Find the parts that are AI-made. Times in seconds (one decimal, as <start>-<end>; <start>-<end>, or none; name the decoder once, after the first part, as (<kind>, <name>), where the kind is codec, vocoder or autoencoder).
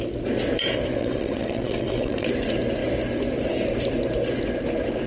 0.9-2.3 (vocoder, WaveNeXt)